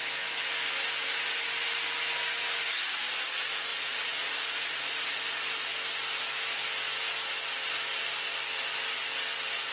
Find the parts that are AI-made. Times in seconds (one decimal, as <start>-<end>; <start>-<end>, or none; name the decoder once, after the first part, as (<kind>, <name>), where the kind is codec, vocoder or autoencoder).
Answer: 3.7-5.2 (vocoder, Vocos)